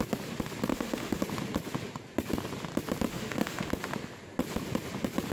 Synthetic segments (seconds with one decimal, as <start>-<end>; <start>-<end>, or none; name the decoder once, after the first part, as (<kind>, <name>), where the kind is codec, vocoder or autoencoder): 0.7-1.2 (autoencoder, DAC-VAE); 3.1-3.7